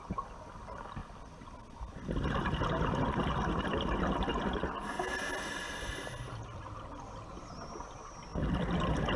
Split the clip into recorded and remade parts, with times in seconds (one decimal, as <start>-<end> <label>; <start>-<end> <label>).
0.0-9.2 recorded